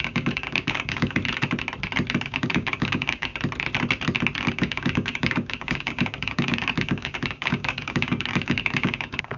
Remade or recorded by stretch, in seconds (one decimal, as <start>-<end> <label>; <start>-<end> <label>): 0.0-1.2 remade; 1.2-2.2 recorded; 2.2-3.3 remade; 3.3-4.4 recorded; 4.4-9.4 remade